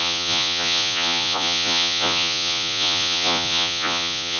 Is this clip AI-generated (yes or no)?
yes